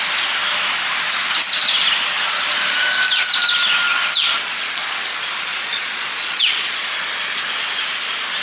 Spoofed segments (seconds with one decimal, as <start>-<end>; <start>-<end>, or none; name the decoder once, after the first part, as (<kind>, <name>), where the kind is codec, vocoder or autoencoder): 5.5-6.9 (vocoder, Vocos)